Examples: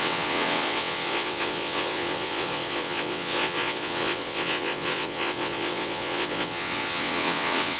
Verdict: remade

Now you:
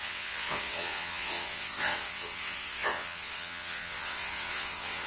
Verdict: remade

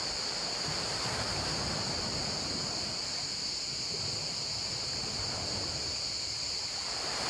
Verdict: recorded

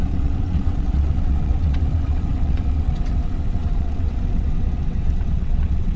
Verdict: remade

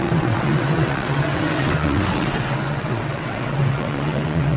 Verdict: remade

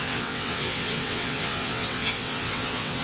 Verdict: remade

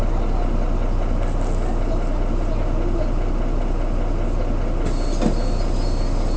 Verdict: recorded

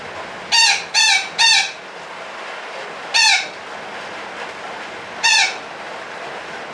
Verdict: recorded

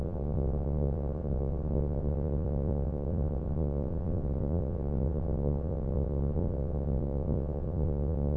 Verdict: remade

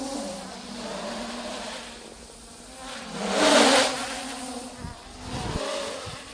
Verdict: recorded